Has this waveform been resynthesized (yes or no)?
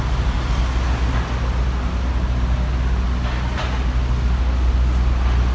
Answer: no